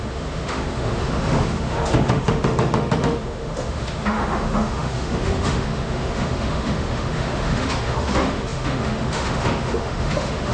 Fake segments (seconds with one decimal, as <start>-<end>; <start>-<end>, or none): 0.0-10.5